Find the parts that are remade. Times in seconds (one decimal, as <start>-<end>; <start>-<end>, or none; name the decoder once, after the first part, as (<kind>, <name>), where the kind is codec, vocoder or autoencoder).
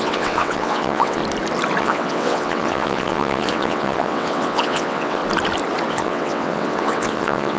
0.0-1.2 (vocoder, WaveNeXt); 1.8-5.2; 5.9-7.6